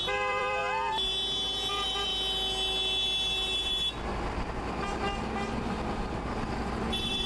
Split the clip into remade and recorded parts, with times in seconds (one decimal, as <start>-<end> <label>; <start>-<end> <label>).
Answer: 0.0-0.6 remade; 0.6-1.7 recorded; 1.7-2.1 remade; 2.1-6.5 recorded; 6.5-7.3 remade